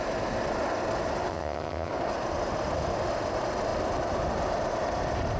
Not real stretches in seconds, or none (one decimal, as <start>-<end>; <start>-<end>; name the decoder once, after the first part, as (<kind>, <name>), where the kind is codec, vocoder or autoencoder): 1.3-1.9 (vocoder, HiFi-GAN)